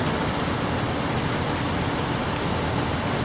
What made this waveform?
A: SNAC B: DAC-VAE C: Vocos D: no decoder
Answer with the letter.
D